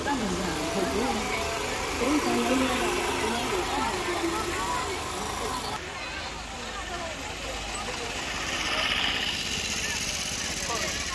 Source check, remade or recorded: recorded